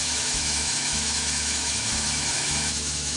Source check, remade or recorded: remade